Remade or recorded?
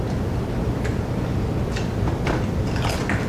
recorded